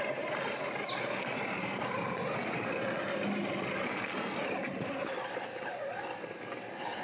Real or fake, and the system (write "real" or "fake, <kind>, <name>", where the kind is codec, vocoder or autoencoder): real